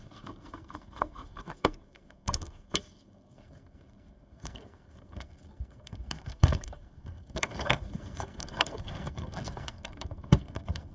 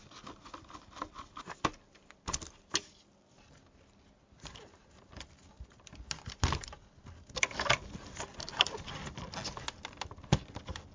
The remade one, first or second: first